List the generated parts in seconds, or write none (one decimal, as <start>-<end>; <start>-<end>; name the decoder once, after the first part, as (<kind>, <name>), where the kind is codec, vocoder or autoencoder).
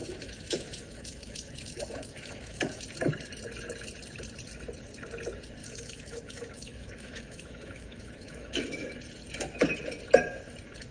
0.0-2.8 (autoencoder, DAC-VAE); 5.6-9.0